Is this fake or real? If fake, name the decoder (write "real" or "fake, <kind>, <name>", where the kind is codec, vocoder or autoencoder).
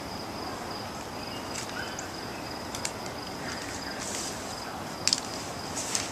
real